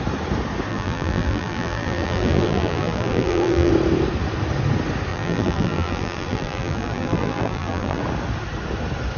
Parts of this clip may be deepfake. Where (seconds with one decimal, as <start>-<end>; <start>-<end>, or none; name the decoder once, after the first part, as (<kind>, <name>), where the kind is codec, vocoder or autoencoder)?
0.7-3.7 (vocoder, BigVGAN v2); 5.1-8.0